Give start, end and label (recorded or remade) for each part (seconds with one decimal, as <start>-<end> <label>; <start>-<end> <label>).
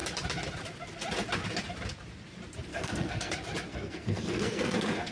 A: 0.0-2.7 recorded; 2.7-3.3 remade; 3.3-3.7 recorded; 3.7-5.1 remade